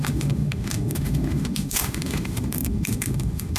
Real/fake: fake